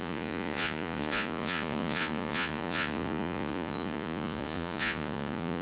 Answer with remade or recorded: remade